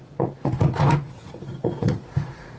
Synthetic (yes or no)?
yes